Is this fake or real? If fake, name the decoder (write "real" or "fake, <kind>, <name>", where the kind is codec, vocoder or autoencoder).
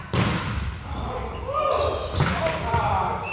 real